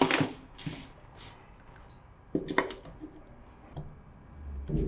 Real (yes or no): yes